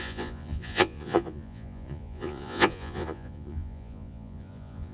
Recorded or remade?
remade